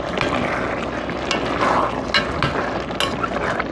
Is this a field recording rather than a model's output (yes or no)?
yes